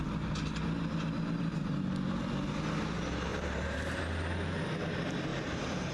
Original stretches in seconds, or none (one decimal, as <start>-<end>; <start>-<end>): 0.0-3.3; 4.0-5.9